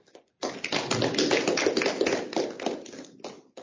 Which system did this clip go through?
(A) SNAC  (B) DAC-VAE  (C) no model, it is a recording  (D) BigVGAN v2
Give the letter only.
C